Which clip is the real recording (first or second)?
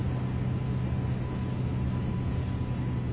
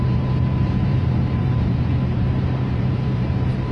first